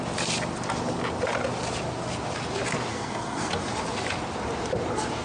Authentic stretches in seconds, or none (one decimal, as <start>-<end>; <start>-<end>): 0.0-2.9; 3.5-5.2